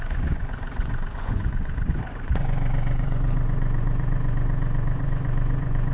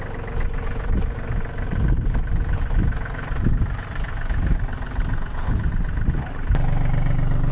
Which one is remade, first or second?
first